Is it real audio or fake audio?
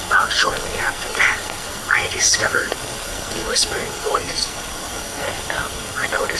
fake